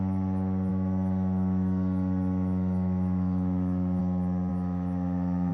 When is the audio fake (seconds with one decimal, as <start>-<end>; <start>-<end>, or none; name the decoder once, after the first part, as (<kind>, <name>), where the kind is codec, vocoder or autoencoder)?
0.7-4.0 (autoencoder, DAC-VAE); 4.5-5.5